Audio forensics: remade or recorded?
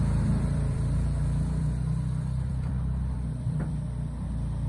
remade